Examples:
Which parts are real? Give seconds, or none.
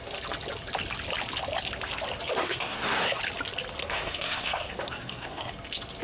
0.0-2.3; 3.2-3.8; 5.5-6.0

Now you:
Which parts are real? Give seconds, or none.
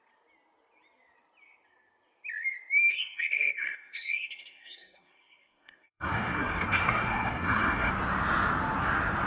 0.0-2.9; 7.9-9.3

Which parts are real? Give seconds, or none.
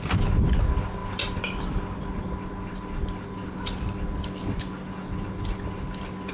0.0-6.3